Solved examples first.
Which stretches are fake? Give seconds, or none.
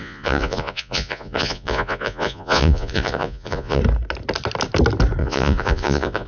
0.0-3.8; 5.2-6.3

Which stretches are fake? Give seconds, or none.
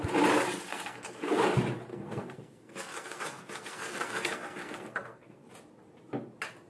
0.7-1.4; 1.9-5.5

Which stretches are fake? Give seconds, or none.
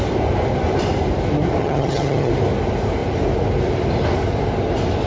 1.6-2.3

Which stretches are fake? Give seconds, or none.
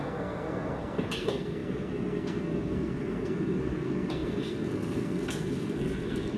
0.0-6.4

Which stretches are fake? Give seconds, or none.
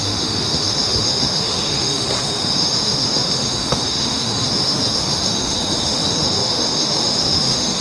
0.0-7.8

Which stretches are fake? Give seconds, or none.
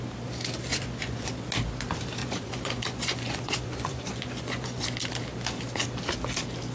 0.7-1.3; 2.2-4.8